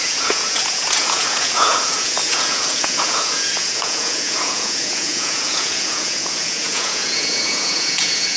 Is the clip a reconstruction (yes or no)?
yes